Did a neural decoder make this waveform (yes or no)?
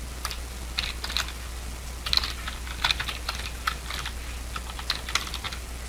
no